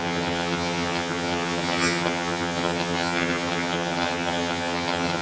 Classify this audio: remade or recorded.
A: remade